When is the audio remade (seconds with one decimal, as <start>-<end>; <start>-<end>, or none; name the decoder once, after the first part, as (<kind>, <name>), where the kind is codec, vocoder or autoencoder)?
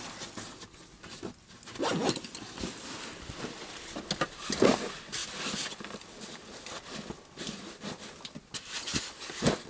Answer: none